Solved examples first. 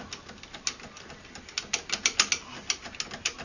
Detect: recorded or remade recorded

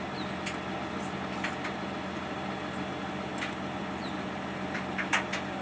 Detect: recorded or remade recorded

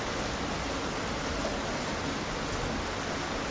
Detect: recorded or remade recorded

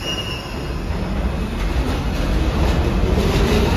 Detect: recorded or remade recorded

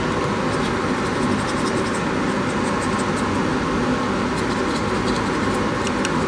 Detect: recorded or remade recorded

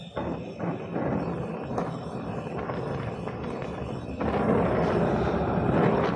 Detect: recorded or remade recorded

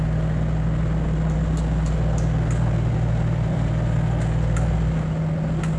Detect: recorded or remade recorded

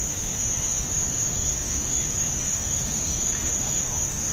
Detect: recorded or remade remade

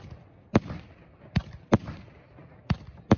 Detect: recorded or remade recorded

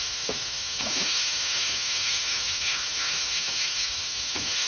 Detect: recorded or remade remade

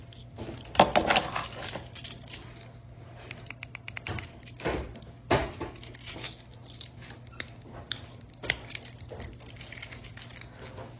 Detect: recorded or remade recorded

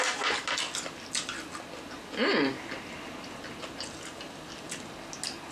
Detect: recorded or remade recorded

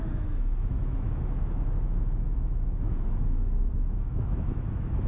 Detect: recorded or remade remade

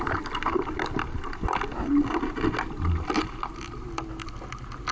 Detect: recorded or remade recorded